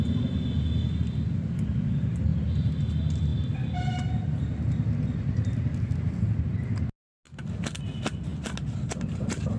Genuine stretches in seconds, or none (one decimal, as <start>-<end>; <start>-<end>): 0.0-9.6